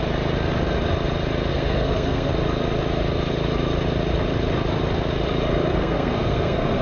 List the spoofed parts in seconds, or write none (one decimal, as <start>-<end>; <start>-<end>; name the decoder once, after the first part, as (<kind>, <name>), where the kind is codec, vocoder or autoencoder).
1.5-2.3 (codec, SNAC); 5.7-6.8